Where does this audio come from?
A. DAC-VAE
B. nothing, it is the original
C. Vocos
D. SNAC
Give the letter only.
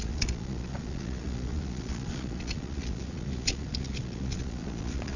C